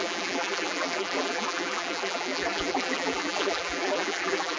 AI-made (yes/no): yes